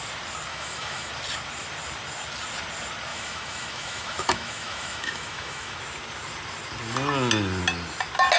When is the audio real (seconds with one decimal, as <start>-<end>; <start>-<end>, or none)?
0.0-0.5; 1.1-3.1; 5.8-8.4